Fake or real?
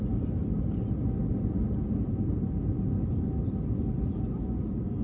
real